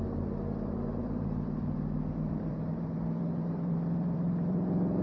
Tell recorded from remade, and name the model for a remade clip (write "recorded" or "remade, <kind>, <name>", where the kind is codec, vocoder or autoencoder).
remade, vocoder, BigVGAN v2